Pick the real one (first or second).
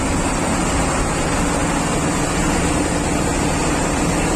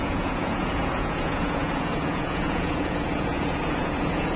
first